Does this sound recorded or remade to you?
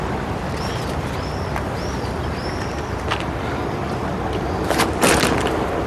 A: recorded